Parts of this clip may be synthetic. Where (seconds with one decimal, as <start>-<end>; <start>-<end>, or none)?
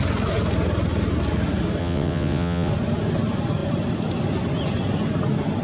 1.8-2.7